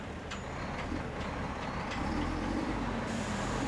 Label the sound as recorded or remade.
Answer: remade